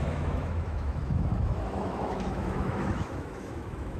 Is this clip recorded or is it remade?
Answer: remade